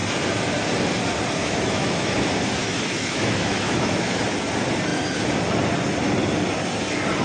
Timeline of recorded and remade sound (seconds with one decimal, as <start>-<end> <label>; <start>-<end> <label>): 0.0-1.4 recorded; 1.4-2.2 remade; 2.2-2.6 recorded; 2.6-4.2 remade; 4.2-7.2 recorded